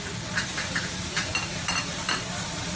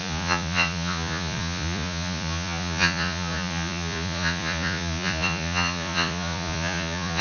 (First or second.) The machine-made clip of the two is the second